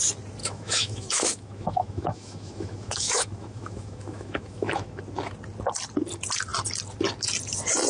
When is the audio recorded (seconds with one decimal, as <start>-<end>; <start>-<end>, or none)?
0.0-0.4; 5.0-7.9